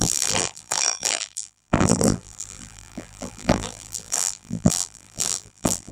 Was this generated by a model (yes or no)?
yes